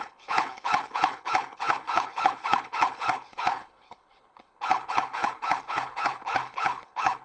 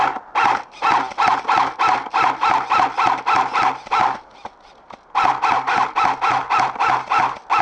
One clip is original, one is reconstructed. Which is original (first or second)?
second